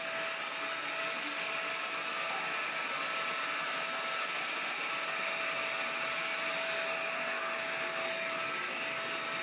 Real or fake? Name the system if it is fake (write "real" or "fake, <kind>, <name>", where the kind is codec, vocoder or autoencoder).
real